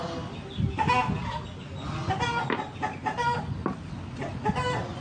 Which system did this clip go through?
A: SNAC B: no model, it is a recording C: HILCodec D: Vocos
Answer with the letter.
B